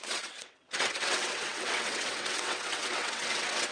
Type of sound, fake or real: fake